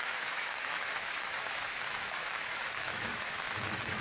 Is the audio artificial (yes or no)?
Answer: yes